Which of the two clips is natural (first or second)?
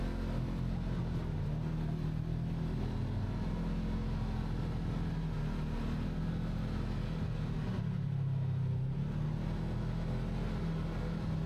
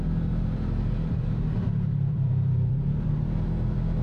first